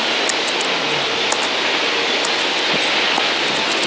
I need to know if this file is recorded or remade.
recorded